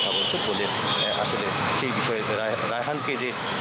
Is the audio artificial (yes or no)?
yes